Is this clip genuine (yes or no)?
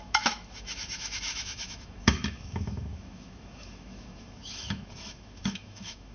no